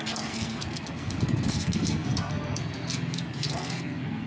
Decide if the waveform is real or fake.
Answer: fake